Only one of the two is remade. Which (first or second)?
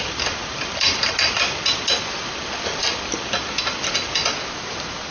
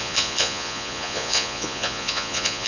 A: second